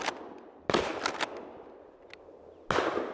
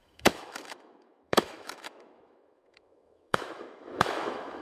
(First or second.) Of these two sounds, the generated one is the second